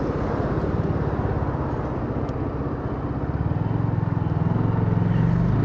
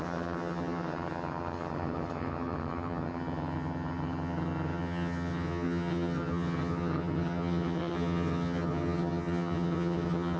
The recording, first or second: first